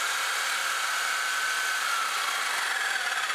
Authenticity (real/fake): real